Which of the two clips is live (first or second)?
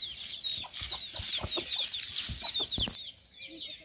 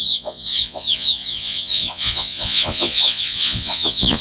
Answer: first